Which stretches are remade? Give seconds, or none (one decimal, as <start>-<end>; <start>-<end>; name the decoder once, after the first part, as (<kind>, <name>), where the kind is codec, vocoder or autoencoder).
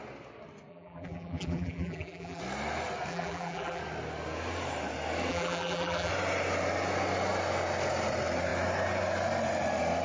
0.7-2.4 (vocoder, BigVGAN v2); 3.1-3.8; 5.3-6.1